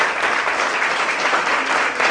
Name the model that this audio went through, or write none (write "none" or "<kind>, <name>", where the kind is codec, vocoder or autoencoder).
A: none